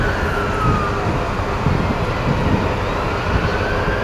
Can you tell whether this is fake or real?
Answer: real